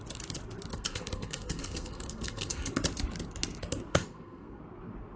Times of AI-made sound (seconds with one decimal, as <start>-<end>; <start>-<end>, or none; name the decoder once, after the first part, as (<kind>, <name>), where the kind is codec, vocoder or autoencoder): 0.7-2.7 (codec, SNAC); 3.9-4.6